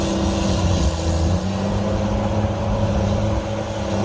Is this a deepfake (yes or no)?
no